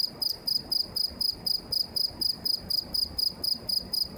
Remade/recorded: remade